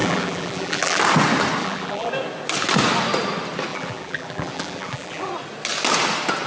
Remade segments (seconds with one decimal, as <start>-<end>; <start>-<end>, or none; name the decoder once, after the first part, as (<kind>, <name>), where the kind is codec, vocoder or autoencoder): 0.0-1.0 (vocoder, BigVGAN v2); 1.6-2.1; 3.7-5.3